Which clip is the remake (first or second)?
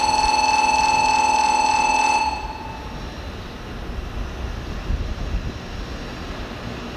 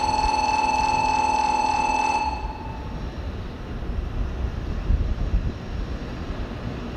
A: second